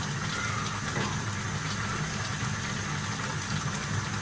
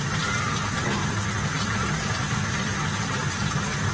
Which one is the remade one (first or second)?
second